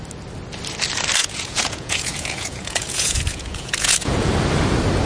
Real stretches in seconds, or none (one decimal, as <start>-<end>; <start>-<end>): 0.0-1.2; 4.3-5.1